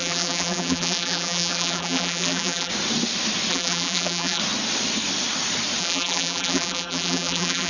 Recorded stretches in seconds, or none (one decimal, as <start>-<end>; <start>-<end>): 2.7-3.5; 4.4-5.8